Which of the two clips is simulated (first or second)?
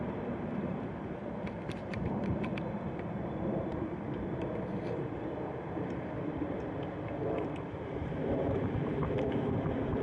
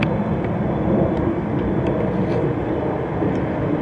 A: first